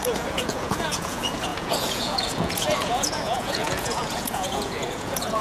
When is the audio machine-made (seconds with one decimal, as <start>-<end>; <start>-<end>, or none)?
0.0-5.4